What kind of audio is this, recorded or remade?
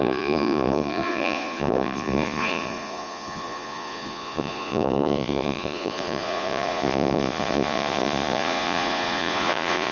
remade